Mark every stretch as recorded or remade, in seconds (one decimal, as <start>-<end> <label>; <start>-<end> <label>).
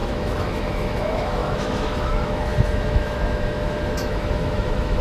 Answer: 0.0-5.0 remade